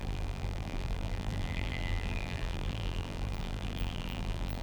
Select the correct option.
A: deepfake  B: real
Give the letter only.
A